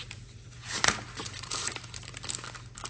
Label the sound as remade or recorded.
recorded